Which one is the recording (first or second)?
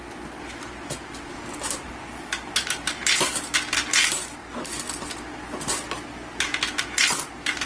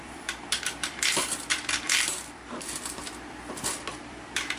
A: first